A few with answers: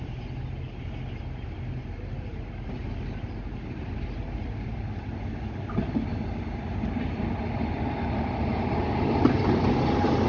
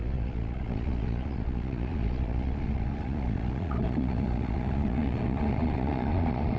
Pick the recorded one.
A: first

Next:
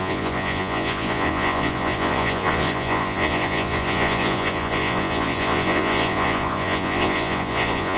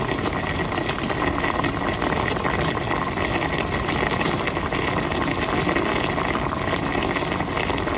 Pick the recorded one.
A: second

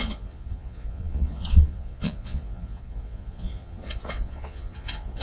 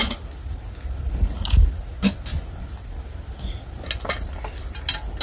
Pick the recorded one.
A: second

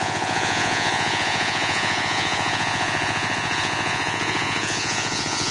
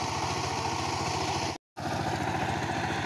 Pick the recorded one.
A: second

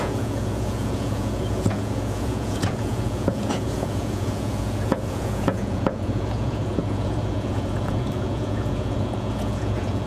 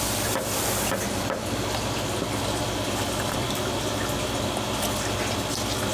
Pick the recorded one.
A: second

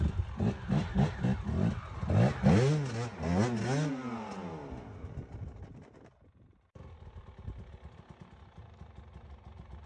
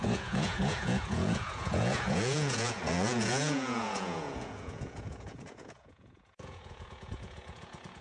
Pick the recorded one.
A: first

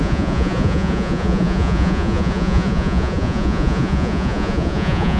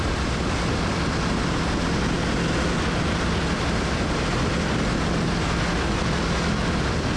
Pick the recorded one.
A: second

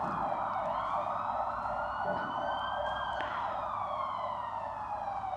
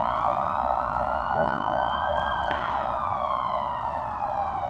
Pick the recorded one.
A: first